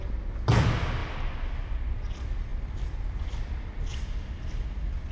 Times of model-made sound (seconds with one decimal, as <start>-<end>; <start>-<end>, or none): 1.0-1.8; 2.5-3.5